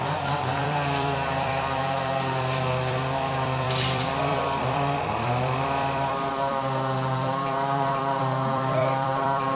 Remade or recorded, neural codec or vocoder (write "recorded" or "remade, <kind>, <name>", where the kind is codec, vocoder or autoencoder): remade, vocoder, BigVGAN v2